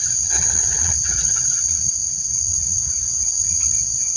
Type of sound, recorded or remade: remade